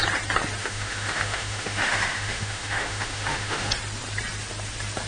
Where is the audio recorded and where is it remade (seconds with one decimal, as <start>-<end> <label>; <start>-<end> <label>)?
0.0-0.6 recorded; 0.6-3.7 remade; 3.7-5.1 recorded